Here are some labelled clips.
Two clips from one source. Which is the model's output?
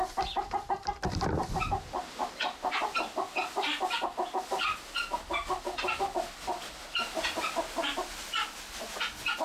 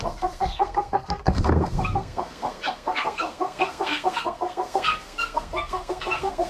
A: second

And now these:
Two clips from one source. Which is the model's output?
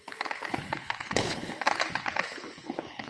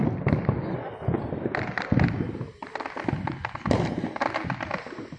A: first